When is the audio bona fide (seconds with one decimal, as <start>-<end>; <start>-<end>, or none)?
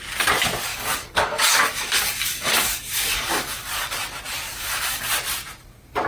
0.0-0.7; 4.0-4.5; 5.1-6.1